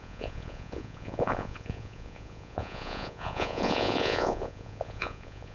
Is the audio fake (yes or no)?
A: yes